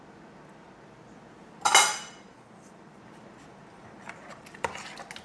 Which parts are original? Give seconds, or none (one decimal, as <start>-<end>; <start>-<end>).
0.0-1.9; 3.0-3.8; 4.7-5.2

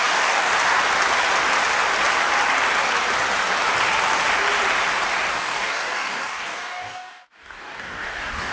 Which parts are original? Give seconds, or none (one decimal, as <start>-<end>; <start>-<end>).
0.5-5.4

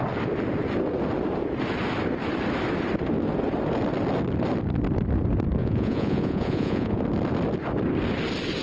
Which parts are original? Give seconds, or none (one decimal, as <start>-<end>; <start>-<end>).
0.0-5.6; 7.0-8.6

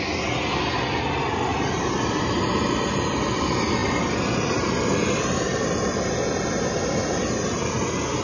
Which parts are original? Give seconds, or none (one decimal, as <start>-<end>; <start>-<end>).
0.0-1.5; 3.4-8.2

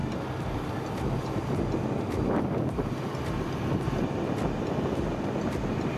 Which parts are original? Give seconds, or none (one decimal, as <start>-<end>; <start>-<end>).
0.0-6.0

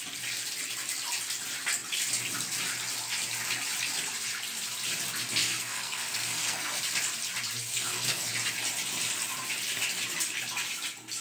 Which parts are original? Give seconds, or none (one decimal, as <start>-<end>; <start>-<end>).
0.0-5.4; 6.8-7.7; 8.3-11.2

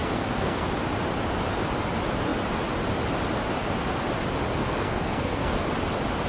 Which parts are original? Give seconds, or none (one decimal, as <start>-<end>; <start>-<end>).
0.7-4.6; 5.6-6.3